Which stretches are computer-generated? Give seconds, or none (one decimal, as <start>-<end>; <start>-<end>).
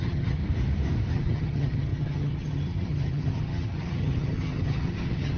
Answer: 0.0-0.4; 1.1-5.4